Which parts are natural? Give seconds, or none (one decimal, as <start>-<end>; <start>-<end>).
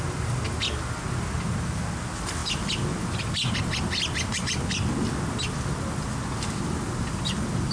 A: 0.0-7.7